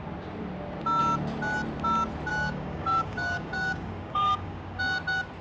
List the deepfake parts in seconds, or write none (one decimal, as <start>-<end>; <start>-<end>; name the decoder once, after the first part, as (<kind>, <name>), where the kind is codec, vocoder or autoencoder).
2.3-4.8 (codec, DAC)